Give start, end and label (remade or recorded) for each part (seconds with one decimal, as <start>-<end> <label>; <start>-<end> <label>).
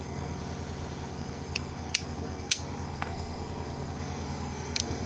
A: 0.0-0.4 remade; 0.4-1.1 recorded; 1.1-5.1 remade